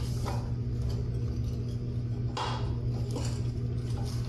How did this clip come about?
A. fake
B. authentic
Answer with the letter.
B